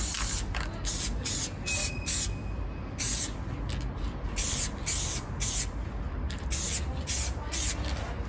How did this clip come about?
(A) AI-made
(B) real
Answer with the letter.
B